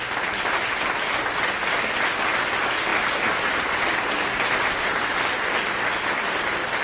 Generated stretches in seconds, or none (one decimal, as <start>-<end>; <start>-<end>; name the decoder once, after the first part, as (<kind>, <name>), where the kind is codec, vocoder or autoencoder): none